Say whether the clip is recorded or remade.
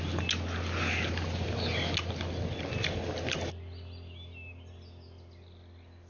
recorded